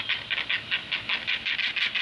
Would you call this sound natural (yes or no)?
yes